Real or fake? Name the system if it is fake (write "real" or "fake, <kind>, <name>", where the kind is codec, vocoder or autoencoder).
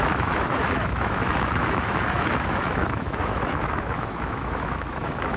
fake, autoencoder, DAC-VAE